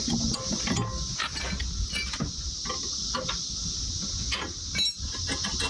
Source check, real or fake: real